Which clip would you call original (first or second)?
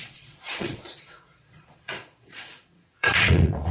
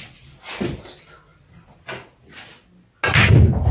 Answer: second